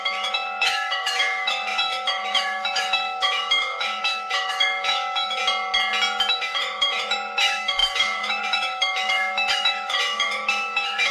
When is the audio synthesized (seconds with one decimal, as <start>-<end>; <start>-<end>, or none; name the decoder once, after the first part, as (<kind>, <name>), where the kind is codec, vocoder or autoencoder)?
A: 0.0-5.4 (autoencoder, DAC-VAE); 6.3-11.1